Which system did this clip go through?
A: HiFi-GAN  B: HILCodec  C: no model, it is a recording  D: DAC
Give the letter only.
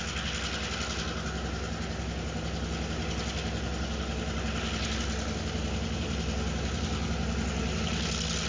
C